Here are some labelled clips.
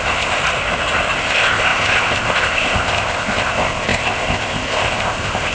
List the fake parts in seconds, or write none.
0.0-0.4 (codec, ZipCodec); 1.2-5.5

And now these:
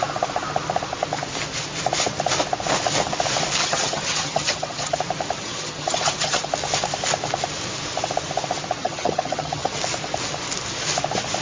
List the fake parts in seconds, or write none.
3.6-5.0 (vocoder, HiFi-GAN); 5.4-6.5; 8.8-9.8